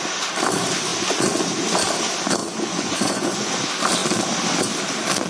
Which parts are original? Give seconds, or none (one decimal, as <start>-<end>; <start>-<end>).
0.0-2.4; 3.5-5.3